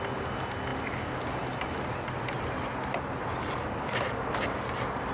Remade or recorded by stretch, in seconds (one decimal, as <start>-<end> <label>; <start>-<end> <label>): 0.0-5.1 recorded